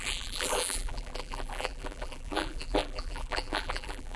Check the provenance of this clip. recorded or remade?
remade